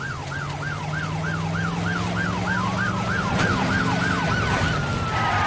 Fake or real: real